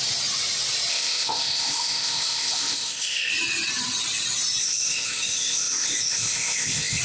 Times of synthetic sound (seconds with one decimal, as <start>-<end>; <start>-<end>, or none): 0.9-3.3; 4.6-7.0